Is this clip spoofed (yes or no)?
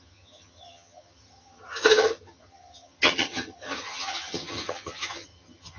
yes